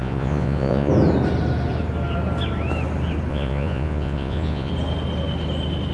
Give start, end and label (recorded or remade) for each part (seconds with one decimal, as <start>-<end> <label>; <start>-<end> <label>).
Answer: 0.0-0.9 remade; 0.9-3.3 recorded; 3.3-4.7 remade; 4.7-5.9 recorded